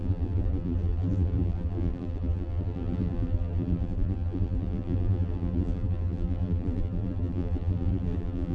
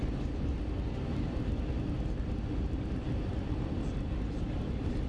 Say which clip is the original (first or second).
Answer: second